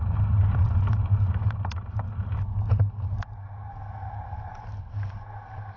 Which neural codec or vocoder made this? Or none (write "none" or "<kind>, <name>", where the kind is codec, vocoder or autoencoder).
none